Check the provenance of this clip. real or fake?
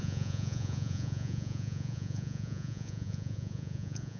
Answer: fake